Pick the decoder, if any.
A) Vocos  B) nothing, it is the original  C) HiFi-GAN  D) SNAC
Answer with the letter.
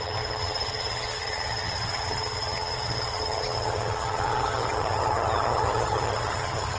C